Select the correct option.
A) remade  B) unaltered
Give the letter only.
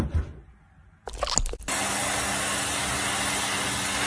B